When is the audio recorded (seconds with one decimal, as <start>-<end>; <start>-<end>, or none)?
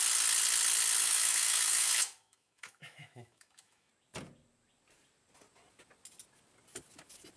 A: 0.0-1.0; 3.9-7.4